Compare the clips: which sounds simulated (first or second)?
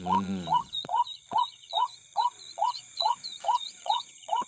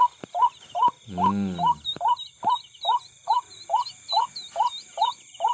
first